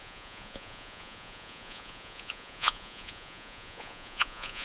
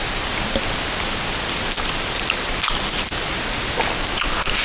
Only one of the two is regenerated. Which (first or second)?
first